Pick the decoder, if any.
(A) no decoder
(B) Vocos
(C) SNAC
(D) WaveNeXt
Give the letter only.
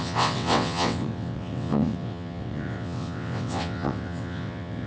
D